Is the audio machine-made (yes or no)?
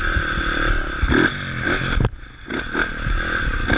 no